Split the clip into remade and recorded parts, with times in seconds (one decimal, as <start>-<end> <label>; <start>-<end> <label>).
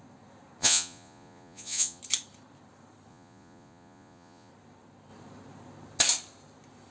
0.0-0.6 recorded; 0.6-2.0 remade; 2.0-3.1 recorded; 3.1-4.5 remade; 4.5-6.9 recorded